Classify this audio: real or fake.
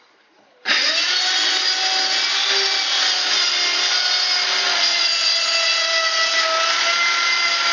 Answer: real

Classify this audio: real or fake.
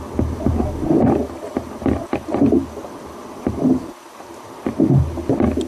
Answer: real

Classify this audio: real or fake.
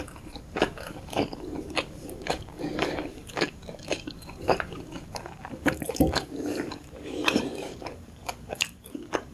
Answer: fake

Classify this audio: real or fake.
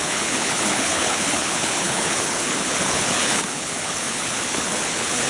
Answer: fake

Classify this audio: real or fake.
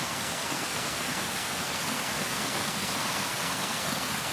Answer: fake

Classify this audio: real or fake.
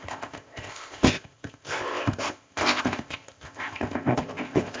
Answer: fake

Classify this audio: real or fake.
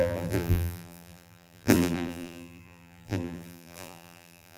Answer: fake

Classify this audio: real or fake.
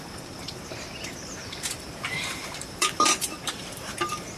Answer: fake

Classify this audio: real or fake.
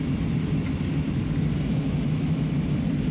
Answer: real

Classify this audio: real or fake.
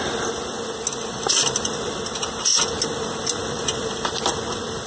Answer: real